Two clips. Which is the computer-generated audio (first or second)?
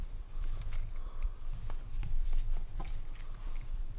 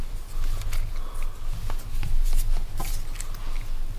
first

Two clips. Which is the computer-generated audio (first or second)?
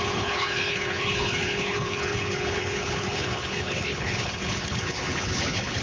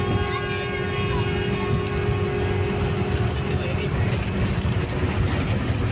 first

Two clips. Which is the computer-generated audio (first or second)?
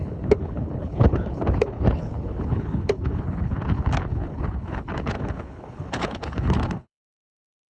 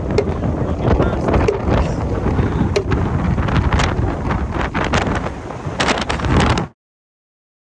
first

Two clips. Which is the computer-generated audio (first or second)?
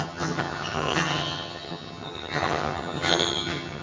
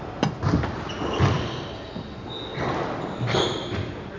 first